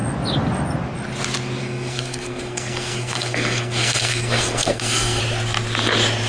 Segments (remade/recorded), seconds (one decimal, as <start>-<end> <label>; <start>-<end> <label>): 0.0-1.6 recorded; 1.6-5.2 remade; 5.2-6.3 recorded